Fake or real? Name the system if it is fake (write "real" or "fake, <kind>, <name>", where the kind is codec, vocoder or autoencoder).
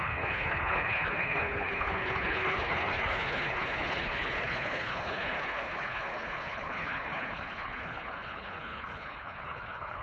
fake, codec, HILCodec